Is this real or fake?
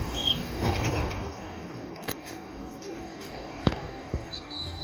fake